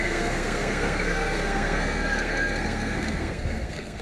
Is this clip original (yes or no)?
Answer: no